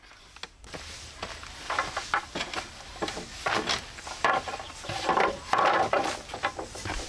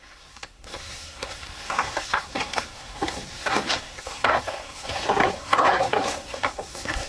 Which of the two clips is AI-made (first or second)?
second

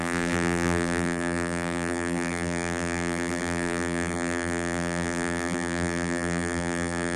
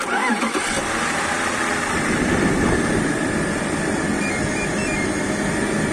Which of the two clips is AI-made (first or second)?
first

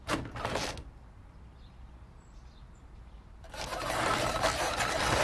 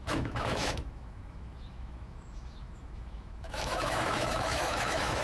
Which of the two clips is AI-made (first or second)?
second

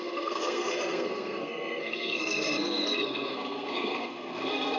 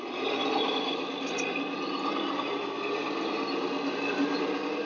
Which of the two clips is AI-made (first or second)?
first